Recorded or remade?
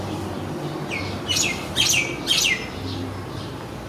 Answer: recorded